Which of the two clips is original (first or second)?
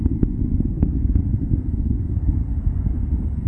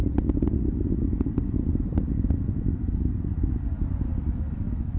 second